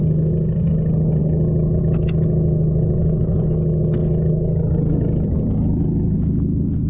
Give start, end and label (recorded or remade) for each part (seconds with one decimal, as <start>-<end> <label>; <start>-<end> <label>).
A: 0.0-3.0 recorded; 3.0-3.8 remade; 3.8-6.9 recorded